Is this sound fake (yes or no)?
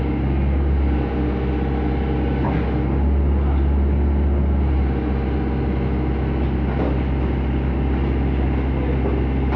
no